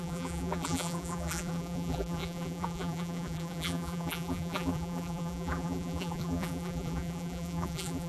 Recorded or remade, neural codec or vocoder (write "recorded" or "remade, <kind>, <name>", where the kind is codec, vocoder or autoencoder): remade, vocoder, BigVGAN v2